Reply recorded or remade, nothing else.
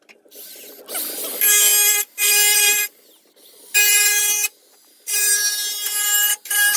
recorded